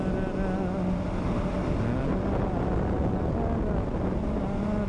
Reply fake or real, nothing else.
real